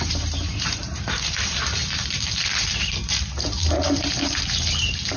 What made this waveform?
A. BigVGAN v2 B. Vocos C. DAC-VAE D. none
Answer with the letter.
A